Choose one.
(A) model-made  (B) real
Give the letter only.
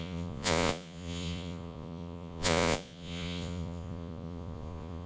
A